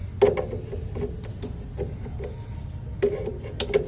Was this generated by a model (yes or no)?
no